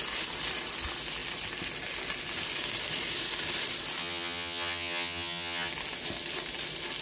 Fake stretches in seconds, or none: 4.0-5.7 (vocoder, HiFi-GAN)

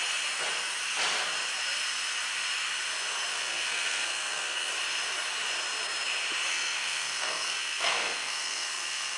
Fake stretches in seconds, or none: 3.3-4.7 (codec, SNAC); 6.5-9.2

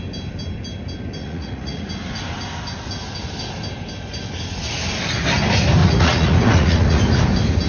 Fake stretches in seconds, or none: 1.2-1.9 (vocoder, Vocos); 5.8-7.0

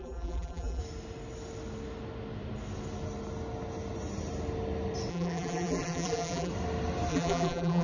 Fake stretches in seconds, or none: 0.0-0.8 (vocoder, BigVGAN v2); 5.1-6.5; 7.1-7.8